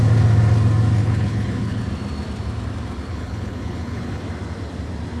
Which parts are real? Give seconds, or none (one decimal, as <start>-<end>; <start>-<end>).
0.0-1.0; 1.8-3.1; 4.2-5.2